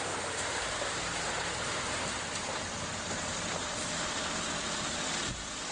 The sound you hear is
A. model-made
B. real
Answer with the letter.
B